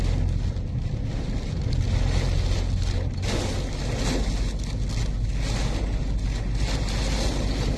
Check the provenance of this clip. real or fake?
real